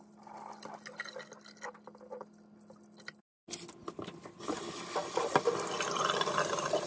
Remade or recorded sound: recorded